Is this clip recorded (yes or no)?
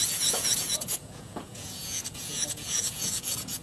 no